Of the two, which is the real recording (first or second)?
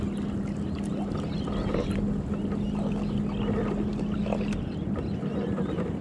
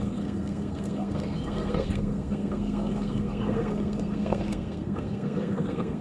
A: first